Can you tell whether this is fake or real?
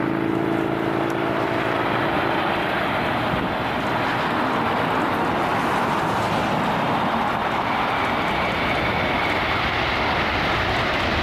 real